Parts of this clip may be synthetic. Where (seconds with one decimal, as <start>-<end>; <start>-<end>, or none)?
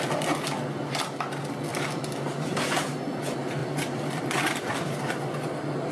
1.7-2.5; 3.6-5.5